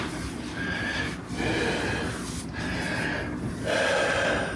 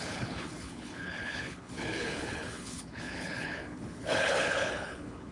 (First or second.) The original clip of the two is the first